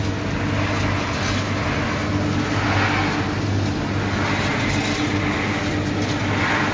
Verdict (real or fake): real